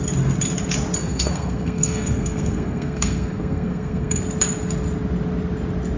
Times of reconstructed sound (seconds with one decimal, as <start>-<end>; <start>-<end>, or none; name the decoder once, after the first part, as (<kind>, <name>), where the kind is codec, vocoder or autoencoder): 1.0-4.2 (codec, SNAC)